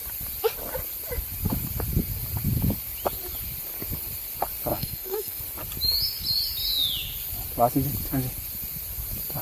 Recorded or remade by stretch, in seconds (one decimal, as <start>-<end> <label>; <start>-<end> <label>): 0.0-4.7 recorded; 4.7-5.4 remade; 5.4-9.4 recorded